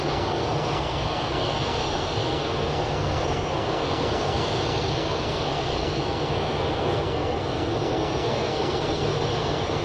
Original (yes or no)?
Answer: no